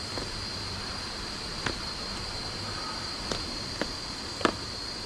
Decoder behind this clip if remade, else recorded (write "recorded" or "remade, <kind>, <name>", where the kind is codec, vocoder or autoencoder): recorded